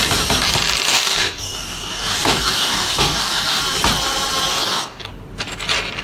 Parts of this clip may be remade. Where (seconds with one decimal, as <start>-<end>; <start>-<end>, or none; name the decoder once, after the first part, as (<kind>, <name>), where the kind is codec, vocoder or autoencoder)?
0.9-3.6 (codec, DAC); 4.5-5.1